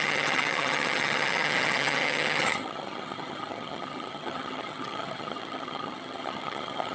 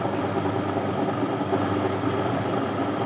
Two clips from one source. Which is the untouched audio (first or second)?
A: second